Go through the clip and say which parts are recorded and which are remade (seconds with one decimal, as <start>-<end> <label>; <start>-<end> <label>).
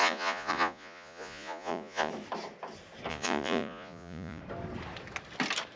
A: 0.0-2.1 remade; 2.1-3.1 recorded; 3.1-4.4 remade; 4.4-5.8 recorded